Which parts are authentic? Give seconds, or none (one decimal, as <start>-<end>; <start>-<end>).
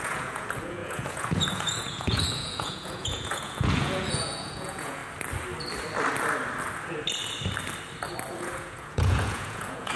5.0-8.4